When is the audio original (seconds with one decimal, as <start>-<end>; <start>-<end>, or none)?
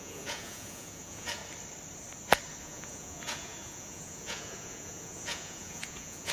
1.4-2.6